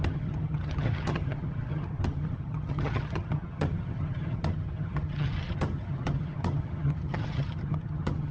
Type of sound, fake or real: fake